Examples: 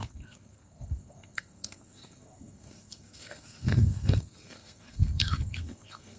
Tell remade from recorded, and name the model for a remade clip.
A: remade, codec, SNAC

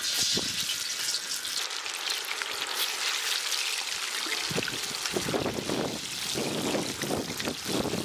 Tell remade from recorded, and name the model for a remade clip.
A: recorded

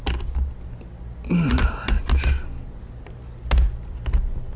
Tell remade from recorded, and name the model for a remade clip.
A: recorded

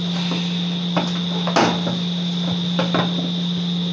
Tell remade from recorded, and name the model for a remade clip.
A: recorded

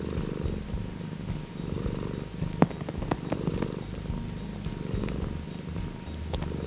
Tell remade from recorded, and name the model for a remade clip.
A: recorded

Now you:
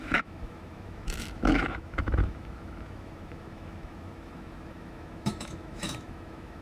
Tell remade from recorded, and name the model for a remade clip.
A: remade, autoencoder, DAC-VAE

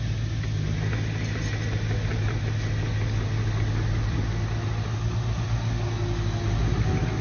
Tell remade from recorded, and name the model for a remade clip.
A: recorded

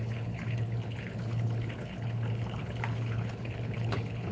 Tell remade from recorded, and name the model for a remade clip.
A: remade, codec, HILCodec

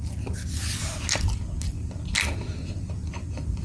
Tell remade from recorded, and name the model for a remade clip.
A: recorded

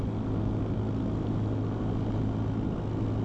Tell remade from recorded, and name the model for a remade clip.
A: recorded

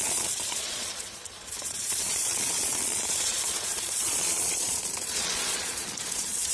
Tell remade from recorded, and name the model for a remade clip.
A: remade, vocoder, Vocos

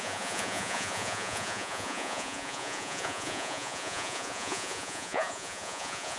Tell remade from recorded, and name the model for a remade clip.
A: remade, vocoder, Vocos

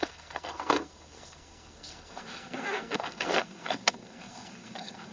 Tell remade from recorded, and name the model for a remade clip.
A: remade, codec, SNAC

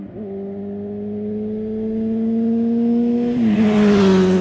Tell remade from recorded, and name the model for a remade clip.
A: recorded